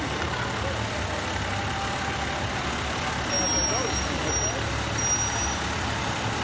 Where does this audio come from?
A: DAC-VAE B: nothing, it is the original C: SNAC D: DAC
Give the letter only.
B